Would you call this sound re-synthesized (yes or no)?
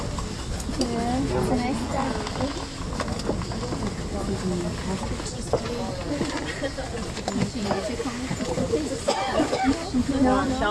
no